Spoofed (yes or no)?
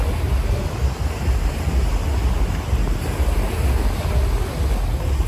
no